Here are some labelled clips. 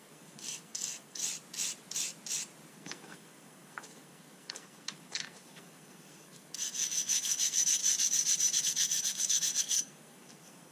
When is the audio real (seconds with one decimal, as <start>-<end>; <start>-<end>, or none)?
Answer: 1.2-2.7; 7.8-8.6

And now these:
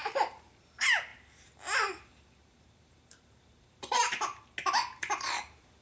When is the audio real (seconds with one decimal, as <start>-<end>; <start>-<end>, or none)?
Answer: 4.3-5.0

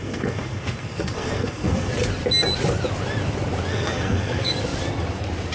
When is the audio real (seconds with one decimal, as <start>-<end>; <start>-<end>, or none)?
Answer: 1.9-3.7; 4.5-5.5

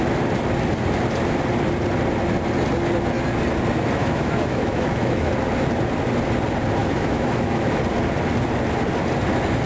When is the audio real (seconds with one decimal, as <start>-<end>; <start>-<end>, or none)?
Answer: 0.0-4.0; 5.3-6.8; 7.8-9.7

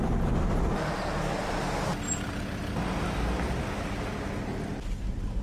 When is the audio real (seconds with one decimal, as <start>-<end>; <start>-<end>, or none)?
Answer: 0.0-5.4

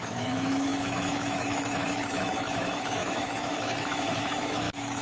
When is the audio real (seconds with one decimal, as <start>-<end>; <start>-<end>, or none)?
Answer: none

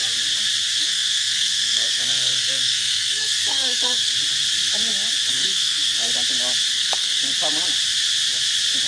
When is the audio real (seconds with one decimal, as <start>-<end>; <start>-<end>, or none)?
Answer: 0.0-0.8; 4.1-5.3; 6.1-6.7; 7.2-8.9

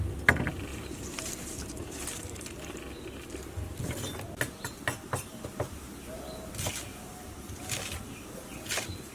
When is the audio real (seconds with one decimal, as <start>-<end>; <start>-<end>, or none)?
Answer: 0.0-0.7; 2.9-6.9; 7.8-9.1